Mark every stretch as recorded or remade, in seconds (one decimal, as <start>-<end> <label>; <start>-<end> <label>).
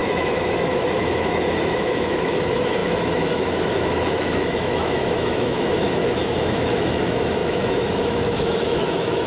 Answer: 0.0-9.3 remade